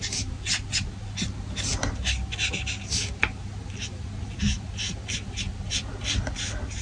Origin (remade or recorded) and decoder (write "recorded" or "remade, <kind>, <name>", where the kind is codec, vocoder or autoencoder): recorded